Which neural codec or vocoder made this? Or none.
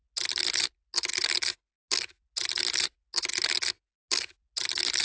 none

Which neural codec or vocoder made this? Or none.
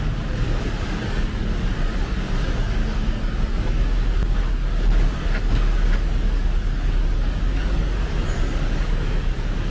codec, DAC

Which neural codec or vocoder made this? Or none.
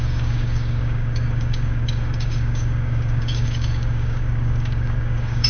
codec, DAC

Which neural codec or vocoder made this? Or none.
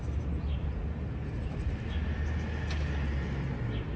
none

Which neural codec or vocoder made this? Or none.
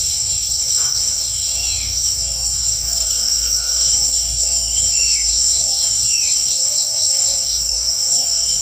codec, DAC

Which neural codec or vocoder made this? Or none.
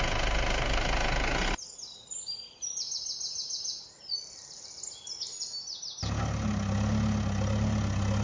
none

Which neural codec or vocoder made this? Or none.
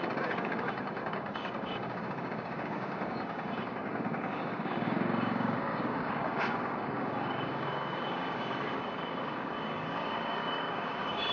codec, DAC